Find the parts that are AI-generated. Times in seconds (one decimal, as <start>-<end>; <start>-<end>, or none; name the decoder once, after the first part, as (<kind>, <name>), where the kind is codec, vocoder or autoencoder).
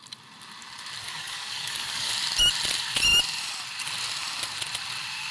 1.0-2.1 (codec, DAC)